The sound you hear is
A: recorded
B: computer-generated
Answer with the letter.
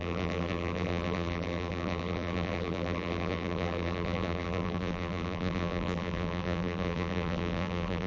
B